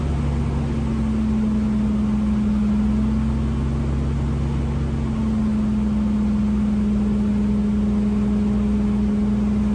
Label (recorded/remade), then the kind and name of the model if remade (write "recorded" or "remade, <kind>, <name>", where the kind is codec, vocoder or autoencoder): recorded